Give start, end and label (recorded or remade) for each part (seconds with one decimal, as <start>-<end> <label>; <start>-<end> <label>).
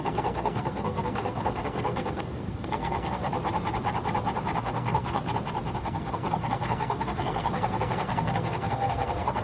0.0-3.3 remade; 3.3-4.6 recorded; 4.6-5.2 remade; 5.2-5.8 recorded; 5.8-9.4 remade